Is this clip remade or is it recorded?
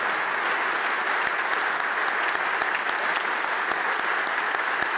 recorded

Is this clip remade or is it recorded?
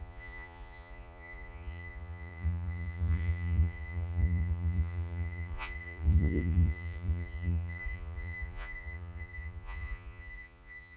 remade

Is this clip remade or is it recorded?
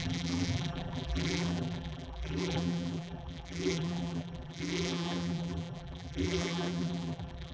remade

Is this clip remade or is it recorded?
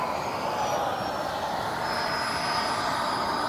recorded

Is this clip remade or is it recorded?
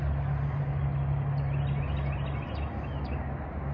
recorded